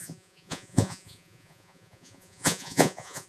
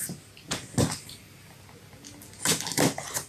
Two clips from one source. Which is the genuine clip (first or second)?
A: second